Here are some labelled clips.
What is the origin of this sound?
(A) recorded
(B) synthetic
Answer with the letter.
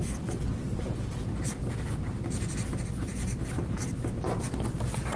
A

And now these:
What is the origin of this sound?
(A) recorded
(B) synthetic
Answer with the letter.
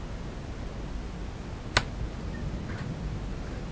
A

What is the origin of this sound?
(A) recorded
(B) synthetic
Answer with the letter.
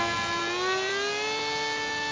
A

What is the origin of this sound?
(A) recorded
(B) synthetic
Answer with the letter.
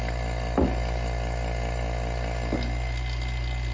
A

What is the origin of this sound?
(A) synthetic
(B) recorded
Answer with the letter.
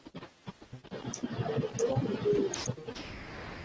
B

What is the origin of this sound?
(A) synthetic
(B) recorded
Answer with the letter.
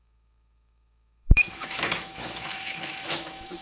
A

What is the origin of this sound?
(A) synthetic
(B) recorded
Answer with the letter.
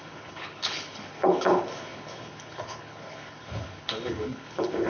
A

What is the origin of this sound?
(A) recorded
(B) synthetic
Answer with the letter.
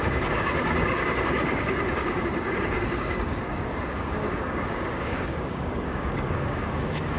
B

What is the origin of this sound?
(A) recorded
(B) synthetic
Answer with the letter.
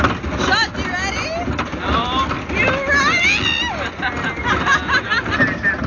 A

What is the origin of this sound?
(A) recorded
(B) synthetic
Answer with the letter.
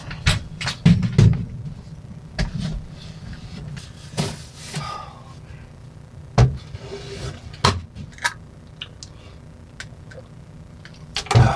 A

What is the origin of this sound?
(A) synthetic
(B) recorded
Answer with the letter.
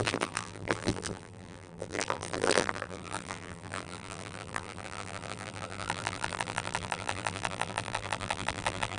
A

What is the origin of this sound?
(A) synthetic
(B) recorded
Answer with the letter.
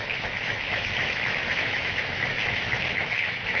A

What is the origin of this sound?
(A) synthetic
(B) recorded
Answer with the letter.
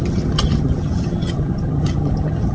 A